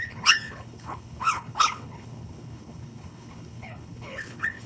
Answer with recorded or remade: remade